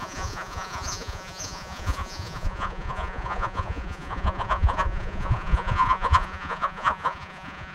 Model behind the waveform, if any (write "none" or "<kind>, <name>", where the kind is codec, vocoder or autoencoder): vocoder, Vocos